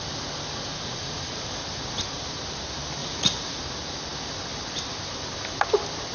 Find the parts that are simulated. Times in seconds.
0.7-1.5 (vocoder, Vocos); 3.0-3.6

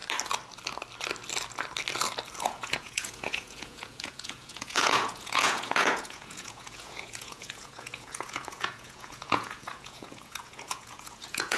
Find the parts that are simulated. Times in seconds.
2.4-11.6 (vocoder, Vocos)

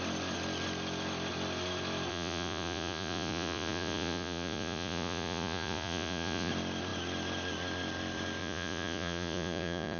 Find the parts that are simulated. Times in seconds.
2.1-6.5 (vocoder, Vocos); 8.4-10.0

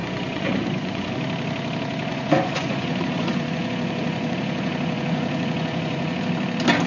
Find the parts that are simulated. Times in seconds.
0.0-1.1 (vocoder, Vocos); 2.1-6.2

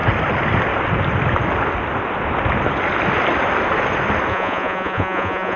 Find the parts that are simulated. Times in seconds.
4.3-5.6 (vocoder, Vocos)